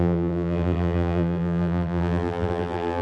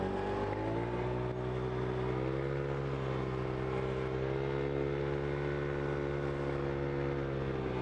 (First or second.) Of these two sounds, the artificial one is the first